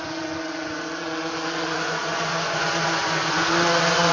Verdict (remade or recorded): remade